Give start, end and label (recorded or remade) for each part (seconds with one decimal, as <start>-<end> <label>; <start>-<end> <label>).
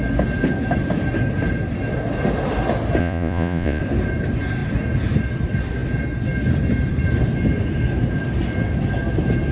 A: 0.0-3.0 recorded; 3.0-3.8 remade; 3.8-9.5 recorded